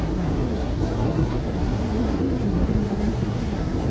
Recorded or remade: remade